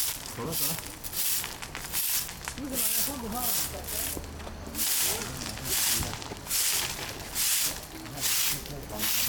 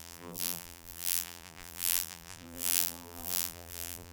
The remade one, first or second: second